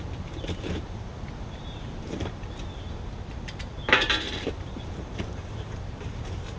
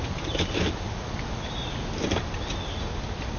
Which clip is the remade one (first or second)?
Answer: first